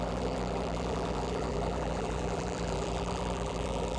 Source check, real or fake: fake